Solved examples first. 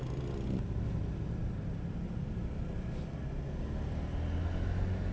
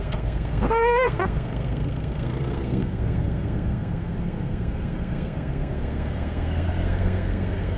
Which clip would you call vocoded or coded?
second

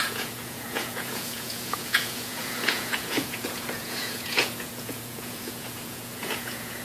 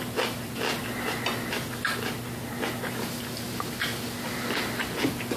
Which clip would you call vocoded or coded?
first